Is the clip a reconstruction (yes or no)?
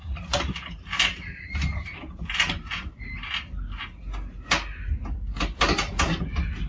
no